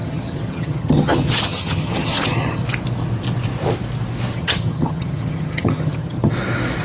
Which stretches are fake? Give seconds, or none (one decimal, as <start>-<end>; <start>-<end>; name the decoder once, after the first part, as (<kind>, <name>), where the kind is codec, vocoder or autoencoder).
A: 0.0-2.6 (vocoder, HiFi-GAN); 4.3-6.3

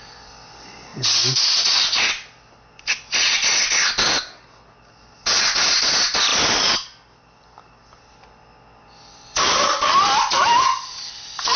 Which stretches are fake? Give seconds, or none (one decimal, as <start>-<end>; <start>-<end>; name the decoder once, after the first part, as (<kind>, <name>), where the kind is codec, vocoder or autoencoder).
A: none

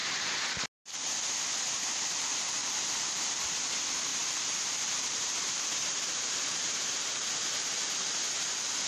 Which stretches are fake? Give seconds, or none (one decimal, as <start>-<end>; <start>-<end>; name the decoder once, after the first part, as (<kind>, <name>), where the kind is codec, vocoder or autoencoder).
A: 2.6-3.5 (vocoder, BigVGAN v2); 4.1-8.1

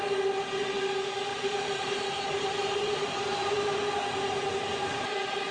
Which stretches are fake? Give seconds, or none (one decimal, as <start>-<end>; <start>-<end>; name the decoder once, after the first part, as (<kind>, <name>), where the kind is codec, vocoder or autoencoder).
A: 1.3-3.8 (vocoder, BigVGAN v2)

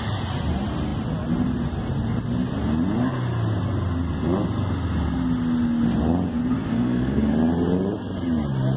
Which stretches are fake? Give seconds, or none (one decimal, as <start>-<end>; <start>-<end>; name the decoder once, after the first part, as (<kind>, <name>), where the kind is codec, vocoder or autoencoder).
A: 6.7-7.3 (codec, SNAC)

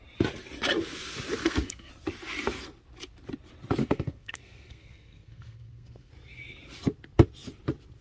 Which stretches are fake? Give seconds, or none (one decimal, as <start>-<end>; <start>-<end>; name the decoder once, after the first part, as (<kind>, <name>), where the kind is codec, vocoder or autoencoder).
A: 1.4-1.9 (codec, SNAC); 3.8-6.1